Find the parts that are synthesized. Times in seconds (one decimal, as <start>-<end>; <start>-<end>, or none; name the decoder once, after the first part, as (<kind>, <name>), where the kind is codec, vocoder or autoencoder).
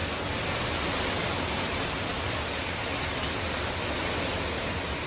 none